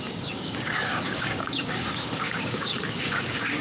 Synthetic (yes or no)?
yes